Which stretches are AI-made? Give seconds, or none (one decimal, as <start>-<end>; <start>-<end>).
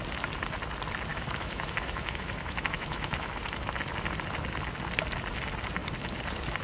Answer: 1.1-3.3